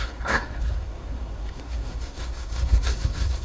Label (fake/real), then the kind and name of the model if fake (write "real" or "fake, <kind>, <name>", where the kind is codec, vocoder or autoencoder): fake, codec, SNAC